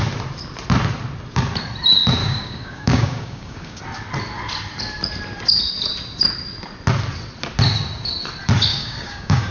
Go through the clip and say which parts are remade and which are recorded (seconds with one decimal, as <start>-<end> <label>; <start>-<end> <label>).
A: 0.0-2.2 recorded; 2.2-3.8 remade; 3.8-8.7 recorded; 8.7-9.5 remade